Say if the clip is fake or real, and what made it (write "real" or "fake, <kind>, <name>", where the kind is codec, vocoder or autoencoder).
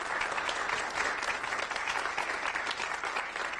real